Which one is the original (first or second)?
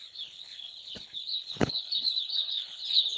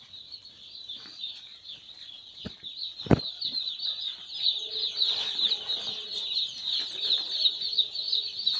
second